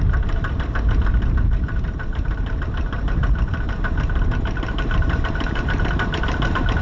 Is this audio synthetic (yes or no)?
yes